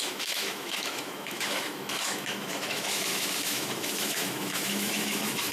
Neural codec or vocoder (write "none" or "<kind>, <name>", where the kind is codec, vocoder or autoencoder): autoencoder, DAC-VAE